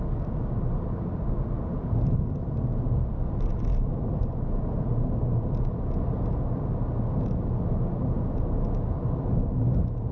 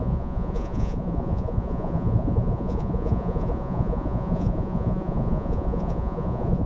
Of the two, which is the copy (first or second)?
second